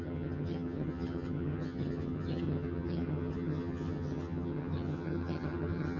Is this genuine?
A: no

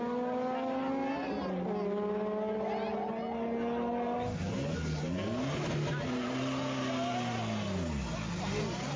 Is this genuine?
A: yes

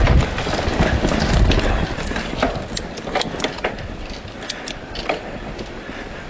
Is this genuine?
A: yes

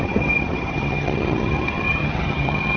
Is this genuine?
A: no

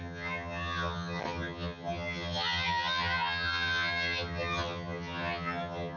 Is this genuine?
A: no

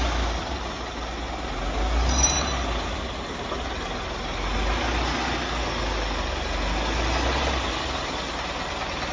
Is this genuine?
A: yes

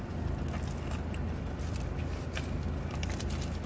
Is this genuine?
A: yes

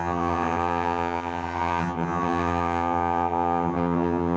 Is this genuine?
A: no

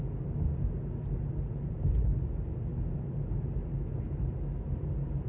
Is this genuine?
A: yes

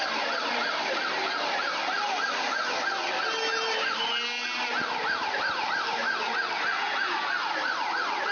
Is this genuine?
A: yes